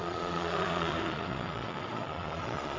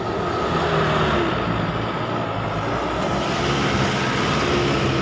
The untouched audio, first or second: second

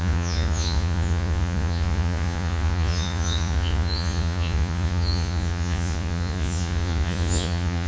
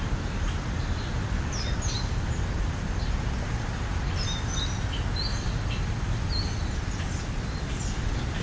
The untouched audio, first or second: second